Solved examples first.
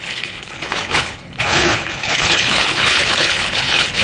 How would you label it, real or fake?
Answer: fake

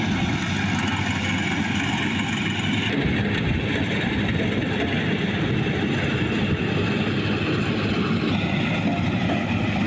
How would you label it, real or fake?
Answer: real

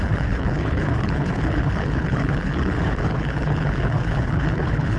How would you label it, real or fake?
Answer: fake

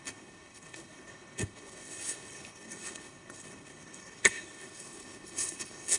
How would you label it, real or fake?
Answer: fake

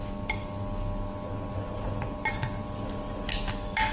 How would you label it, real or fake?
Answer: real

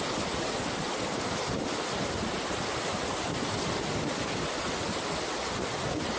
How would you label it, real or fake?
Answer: real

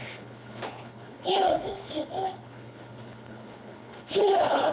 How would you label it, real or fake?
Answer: fake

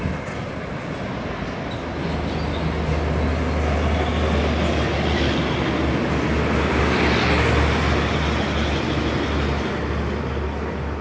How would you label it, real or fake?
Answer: real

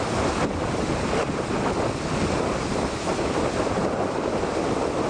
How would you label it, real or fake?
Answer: real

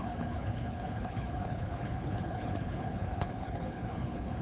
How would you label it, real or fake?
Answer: fake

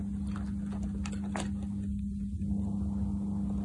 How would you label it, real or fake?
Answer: real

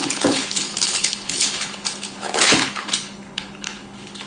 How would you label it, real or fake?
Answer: fake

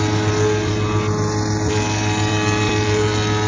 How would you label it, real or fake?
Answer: real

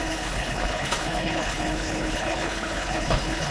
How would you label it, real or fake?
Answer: fake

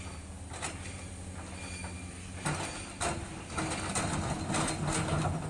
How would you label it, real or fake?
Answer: real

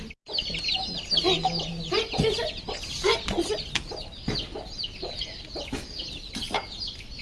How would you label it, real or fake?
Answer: real